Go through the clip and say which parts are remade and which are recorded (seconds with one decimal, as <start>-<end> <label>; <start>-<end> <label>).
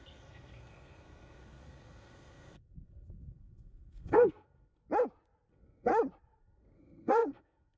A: 0.0-4.8 remade; 4.8-5.5 recorded; 5.5-5.9 remade; 5.9-6.4 recorded; 6.4-7.8 remade